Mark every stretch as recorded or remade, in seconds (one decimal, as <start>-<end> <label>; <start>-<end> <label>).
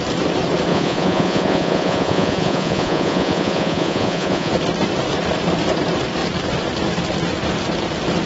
0.0-0.7 recorded; 0.7-4.5 remade; 4.5-8.3 recorded